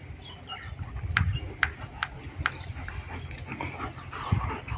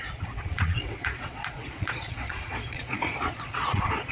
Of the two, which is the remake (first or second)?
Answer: second